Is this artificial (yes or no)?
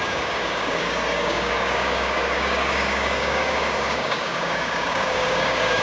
yes